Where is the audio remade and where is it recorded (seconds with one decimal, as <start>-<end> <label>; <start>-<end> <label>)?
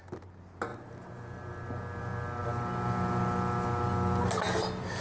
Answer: 0.0-5.0 recorded